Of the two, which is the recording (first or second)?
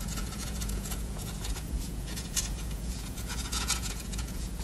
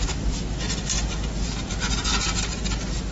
second